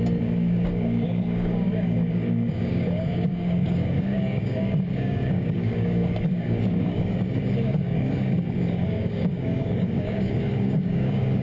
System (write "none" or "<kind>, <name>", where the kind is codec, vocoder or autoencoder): codec, DAC